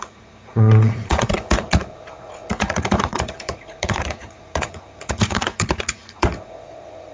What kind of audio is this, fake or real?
fake